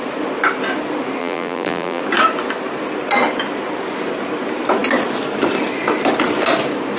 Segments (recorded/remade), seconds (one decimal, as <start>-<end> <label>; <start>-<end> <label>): 0.0-1.2 recorded; 1.2-2.0 remade; 2.0-7.0 recorded